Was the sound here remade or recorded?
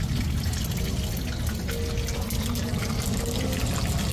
recorded